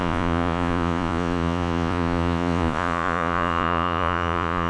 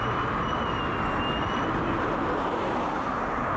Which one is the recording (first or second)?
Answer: second